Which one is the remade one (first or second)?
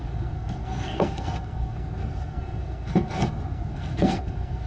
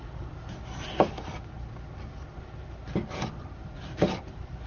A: first